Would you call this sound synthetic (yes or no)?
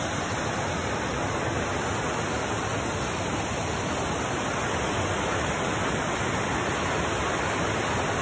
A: no